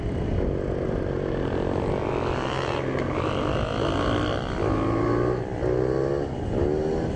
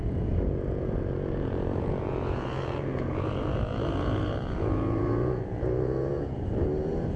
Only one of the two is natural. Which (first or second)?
first